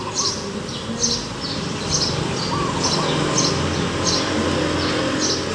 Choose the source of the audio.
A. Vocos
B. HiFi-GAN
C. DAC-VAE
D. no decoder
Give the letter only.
D